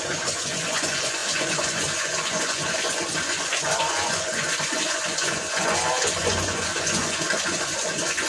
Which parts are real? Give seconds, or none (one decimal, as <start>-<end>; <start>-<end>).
none